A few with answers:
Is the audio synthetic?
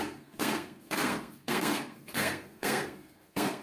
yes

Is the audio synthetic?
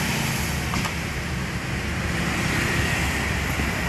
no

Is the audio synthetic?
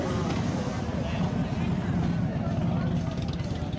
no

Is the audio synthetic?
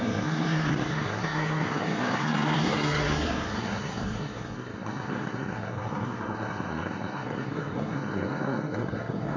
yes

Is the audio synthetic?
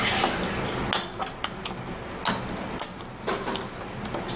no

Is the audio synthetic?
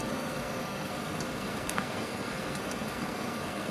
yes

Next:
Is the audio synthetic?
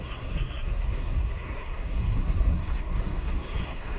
yes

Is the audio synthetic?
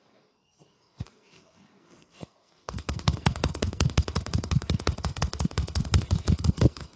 yes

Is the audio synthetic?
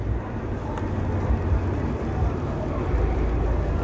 no